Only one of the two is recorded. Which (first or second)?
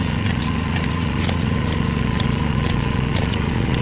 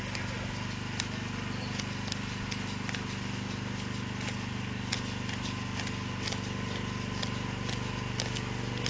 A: second